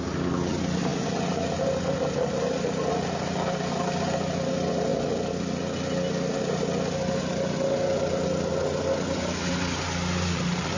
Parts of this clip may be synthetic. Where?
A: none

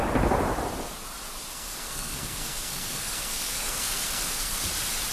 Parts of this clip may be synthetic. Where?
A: 1.5-4.6 (codec, SNAC)

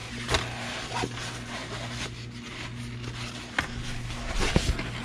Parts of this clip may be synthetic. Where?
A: none